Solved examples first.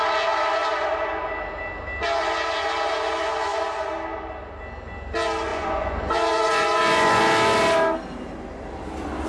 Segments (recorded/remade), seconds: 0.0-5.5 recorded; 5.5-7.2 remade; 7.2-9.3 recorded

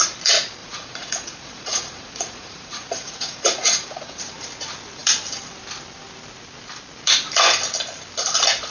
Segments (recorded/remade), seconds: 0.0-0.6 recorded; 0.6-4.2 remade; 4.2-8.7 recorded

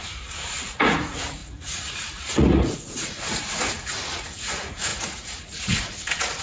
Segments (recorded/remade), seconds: 0.0-6.4 remade